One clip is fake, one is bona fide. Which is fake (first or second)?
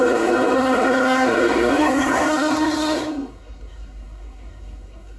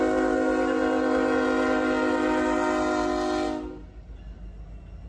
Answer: first